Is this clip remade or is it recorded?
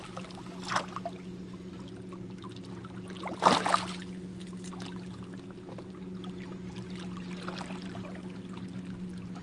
recorded